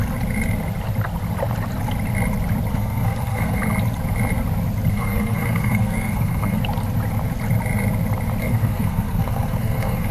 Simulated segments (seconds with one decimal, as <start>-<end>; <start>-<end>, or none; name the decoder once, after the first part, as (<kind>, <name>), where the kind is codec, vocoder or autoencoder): 2.7-3.6 (codec, SNAC); 4.9-6.6; 8.4-10.1